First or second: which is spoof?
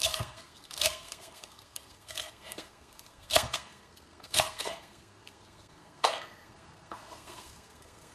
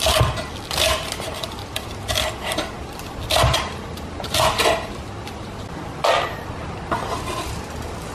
first